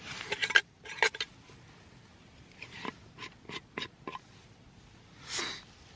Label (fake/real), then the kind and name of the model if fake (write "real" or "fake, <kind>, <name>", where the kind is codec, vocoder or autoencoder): real